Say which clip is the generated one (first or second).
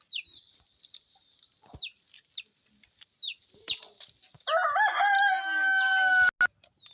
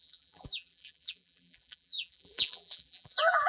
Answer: second